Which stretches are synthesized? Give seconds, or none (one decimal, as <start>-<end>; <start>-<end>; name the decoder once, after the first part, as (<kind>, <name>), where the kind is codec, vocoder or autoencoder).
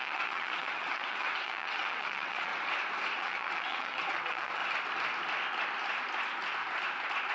0.0-2.5 (vocoder, WaveNeXt); 3.2-4.6